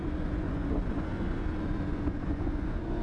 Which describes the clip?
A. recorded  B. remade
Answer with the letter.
B